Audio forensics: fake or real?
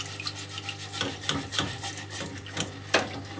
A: real